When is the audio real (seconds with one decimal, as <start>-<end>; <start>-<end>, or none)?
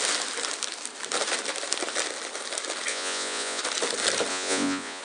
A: 0.0-2.9; 3.6-4.3